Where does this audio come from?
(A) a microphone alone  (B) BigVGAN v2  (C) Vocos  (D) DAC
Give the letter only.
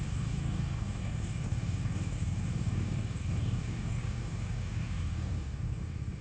D